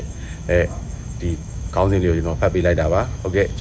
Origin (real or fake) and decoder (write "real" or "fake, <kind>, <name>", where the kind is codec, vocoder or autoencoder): fake, autoencoder, DAC-VAE